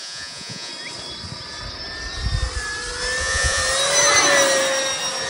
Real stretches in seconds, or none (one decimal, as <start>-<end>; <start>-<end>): 0.7-3.2; 3.6-5.3